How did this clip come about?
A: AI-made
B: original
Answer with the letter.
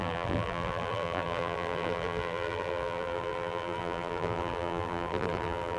A